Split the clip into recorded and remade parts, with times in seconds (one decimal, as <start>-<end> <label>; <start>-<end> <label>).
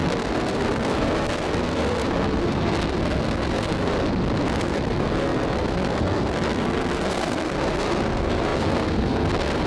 0.0-3.9 remade; 3.9-4.6 recorded; 4.6-9.7 remade